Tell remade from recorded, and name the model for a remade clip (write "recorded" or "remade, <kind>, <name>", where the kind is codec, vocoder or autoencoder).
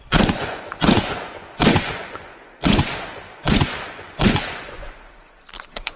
remade, vocoder, Vocos